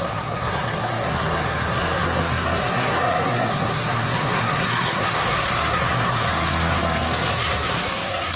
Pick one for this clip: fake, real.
fake